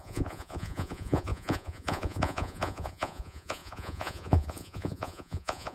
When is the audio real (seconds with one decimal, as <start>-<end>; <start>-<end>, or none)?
none

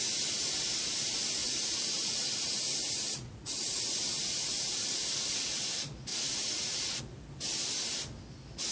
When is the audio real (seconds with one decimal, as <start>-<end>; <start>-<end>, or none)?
0.0-1.4; 5.6-6.1; 7.0-8.7

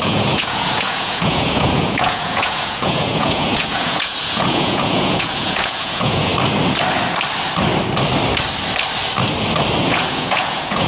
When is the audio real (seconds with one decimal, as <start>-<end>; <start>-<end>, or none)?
6.3-9.8

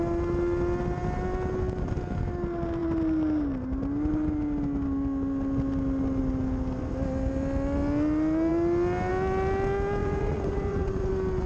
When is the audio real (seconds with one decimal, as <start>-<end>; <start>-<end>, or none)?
0.0-10.0; 11.1-11.5

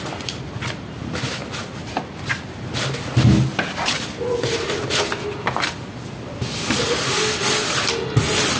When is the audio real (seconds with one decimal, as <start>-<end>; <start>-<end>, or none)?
0.0-8.6

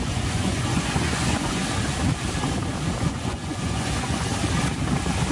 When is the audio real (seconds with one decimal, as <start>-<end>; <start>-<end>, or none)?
1.6-3.0; 4.3-5.3

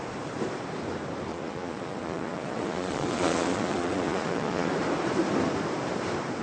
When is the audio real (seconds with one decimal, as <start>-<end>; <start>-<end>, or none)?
0.0-1.3; 4.7-6.4